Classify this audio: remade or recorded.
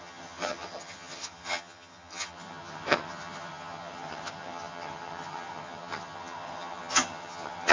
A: remade